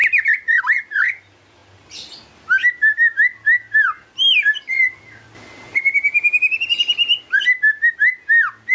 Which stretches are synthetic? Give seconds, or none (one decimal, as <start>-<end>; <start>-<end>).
0.0-0.6